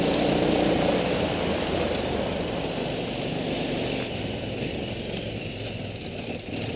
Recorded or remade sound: recorded